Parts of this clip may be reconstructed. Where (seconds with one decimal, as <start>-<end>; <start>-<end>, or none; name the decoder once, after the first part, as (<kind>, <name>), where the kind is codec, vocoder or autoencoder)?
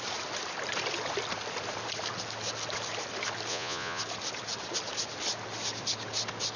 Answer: 3.5-4.0 (vocoder, Vocos)